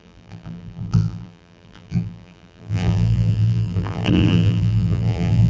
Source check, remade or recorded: remade